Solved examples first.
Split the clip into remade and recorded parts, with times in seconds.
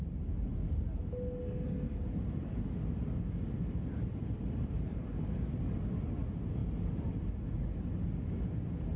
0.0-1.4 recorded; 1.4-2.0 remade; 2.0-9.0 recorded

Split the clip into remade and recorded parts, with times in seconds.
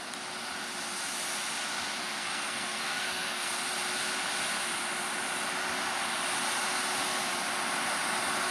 0.0-2.0 recorded; 2.0-3.5 remade; 3.5-8.5 recorded